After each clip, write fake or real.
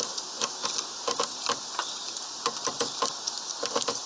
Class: real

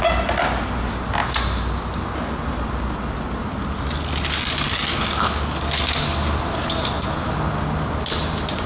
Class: real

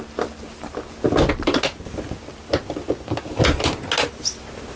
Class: real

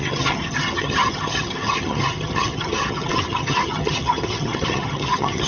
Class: fake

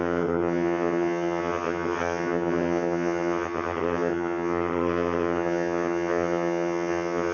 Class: fake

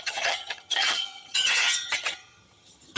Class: fake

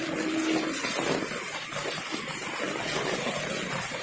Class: real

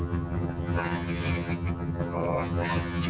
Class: fake